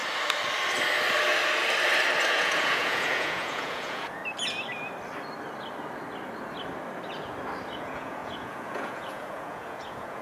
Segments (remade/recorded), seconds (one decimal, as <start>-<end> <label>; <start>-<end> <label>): 0.0-2.3 recorded; 2.3-4.2 remade; 4.2-7.8 recorded; 7.8-10.2 remade